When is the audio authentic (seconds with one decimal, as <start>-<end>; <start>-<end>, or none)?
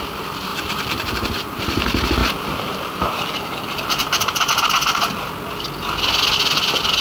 0.0-0.5; 1.6-2.2; 4.5-7.0